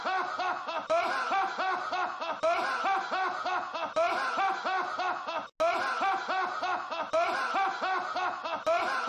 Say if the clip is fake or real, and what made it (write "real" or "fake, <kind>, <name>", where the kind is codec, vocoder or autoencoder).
real